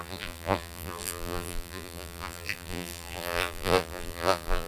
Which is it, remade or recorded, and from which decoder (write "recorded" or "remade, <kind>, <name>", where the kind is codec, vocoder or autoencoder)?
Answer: remade, vocoder, BigVGAN v2